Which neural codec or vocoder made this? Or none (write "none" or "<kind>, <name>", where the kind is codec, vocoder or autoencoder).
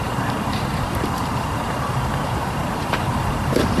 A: vocoder, BigVGAN v2